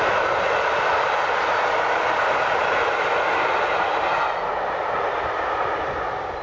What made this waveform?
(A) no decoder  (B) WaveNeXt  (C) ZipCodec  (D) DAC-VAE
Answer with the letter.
A